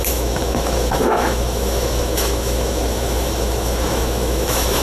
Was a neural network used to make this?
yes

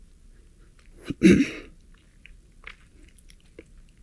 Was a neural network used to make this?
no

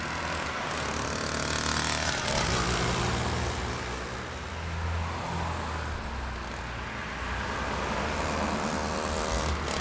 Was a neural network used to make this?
no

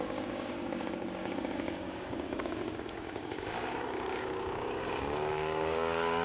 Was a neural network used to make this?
yes